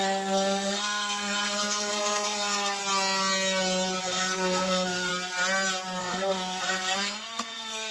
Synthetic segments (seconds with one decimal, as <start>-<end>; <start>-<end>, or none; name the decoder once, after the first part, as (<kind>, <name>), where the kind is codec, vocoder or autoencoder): 0.0-2.8 (codec, SNAC); 4.0-5.1; 6.0-7.9